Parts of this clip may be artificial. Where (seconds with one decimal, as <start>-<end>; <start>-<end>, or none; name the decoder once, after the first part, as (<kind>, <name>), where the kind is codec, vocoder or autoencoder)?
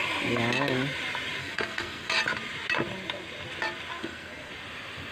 1.4-2.1 (codec, SNAC); 4.0-4.5